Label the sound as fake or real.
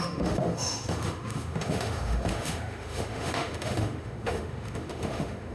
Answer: fake